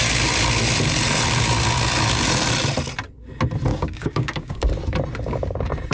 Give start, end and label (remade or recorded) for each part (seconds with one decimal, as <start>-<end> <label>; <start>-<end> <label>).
0.0-3.7 recorded; 3.7-4.7 remade; 4.7-5.9 recorded